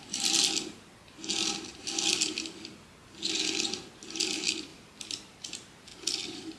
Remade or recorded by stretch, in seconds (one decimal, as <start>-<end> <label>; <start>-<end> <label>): 0.0-6.6 recorded